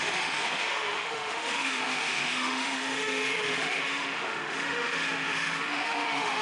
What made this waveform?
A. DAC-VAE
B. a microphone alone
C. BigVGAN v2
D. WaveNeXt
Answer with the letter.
A